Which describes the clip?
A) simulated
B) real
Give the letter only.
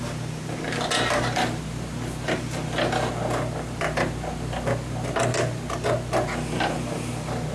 B